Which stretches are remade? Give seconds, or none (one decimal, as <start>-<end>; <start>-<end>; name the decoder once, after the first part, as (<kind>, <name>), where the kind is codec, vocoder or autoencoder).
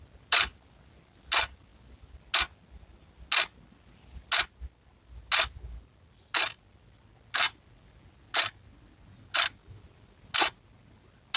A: none